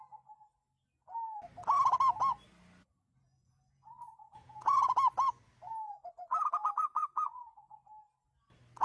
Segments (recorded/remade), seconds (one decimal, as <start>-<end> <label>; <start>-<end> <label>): 0.0-2.9 recorded; 2.9-4.9 remade; 4.9-6.6 recorded; 6.6-7.4 remade; 7.4-8.8 recorded